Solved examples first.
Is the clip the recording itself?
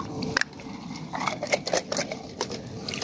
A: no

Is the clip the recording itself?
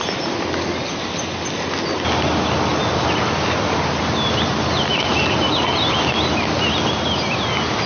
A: yes